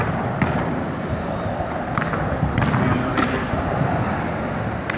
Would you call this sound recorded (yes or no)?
yes